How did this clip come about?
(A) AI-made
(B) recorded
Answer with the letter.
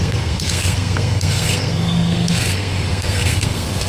A